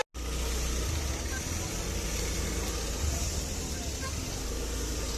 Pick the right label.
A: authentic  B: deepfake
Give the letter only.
A